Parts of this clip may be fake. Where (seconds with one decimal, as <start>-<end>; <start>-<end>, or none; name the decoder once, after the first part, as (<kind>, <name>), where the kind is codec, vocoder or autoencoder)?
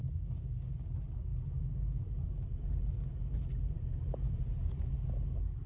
0.0-0.7 (codec, DAC)